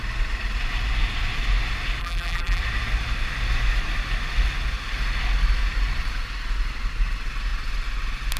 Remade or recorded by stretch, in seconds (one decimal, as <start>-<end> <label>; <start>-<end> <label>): 0.0-2.0 recorded; 2.0-2.6 remade; 2.6-8.4 recorded